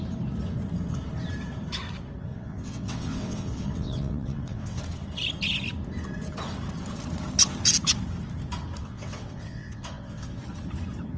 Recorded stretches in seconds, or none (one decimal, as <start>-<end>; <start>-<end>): 0.0-2.3; 4.8-8.8; 10.4-11.2